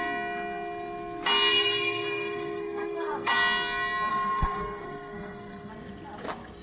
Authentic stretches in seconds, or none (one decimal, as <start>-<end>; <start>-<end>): 0.0-1.5; 3.3-4.1; 5.7-6.6